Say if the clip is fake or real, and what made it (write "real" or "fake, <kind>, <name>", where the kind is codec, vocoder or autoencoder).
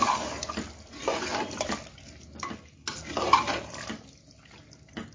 real